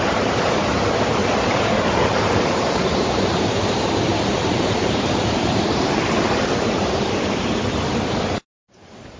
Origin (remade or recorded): remade